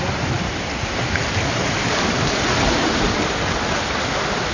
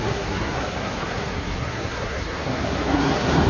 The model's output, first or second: second